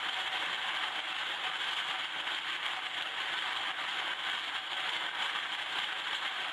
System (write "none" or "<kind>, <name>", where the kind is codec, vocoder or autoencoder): none